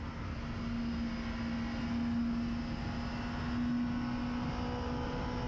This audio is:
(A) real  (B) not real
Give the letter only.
A